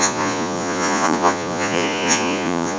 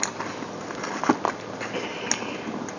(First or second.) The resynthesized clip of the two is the first